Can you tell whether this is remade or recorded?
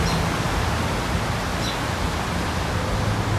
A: recorded